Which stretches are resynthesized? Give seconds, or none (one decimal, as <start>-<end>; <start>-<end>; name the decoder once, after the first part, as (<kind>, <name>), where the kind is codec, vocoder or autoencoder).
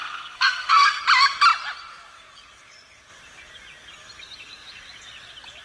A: 0.0-1.0 (codec, SNAC)